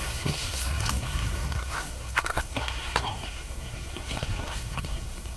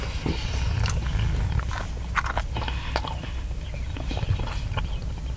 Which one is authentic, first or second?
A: second